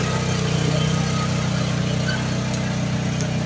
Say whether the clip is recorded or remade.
recorded